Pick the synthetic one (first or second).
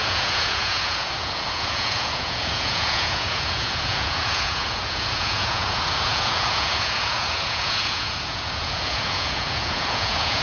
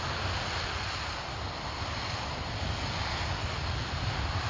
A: first